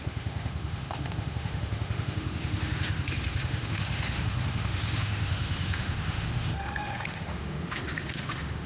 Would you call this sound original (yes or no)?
no